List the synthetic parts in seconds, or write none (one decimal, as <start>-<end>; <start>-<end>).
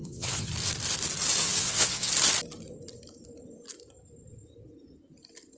0.0-0.5; 1.4-2.1